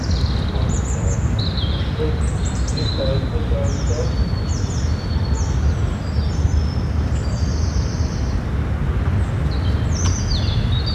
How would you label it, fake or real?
real